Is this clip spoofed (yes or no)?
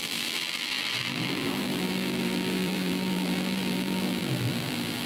yes